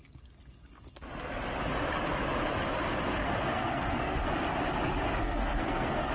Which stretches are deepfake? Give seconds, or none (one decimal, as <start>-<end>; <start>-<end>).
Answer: 3.2-4.3; 5.2-6.1